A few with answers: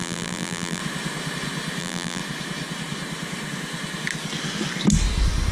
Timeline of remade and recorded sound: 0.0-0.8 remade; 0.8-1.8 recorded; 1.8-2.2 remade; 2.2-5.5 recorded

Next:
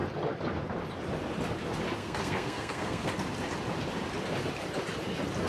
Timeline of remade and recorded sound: 0.0-2.0 recorded; 2.0-3.1 remade; 3.1-5.5 recorded

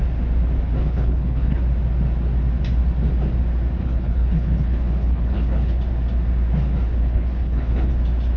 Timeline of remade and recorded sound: 0.0-0.8 recorded; 0.8-1.6 remade; 1.6-3.8 recorded; 3.8-5.8 remade; 5.8-7.0 recorded; 7.0-7.9 remade; 7.9-8.4 recorded

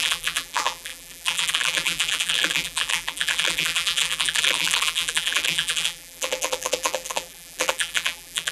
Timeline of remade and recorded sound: 0.0-8.5 remade

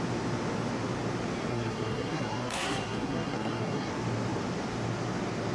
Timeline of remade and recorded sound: 0.0-1.5 recorded; 1.5-3.9 remade; 3.9-5.5 recorded

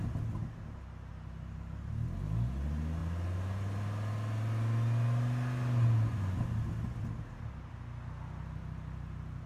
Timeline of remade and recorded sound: 0.0-9.5 recorded

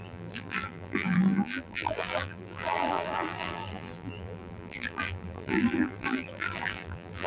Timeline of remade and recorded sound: 0.0-7.3 remade

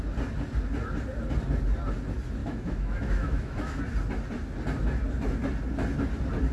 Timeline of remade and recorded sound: 0.0-2.4 recorded; 2.4-3.8 remade; 3.8-6.5 recorded